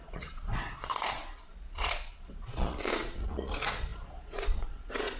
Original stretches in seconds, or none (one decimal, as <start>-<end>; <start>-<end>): none